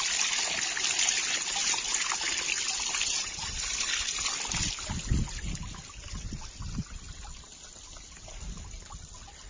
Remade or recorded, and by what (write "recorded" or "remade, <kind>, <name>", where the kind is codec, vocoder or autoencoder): recorded